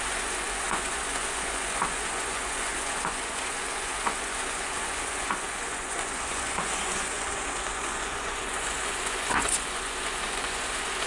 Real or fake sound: fake